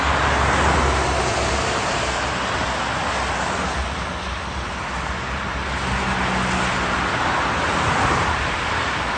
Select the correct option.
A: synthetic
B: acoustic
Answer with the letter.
B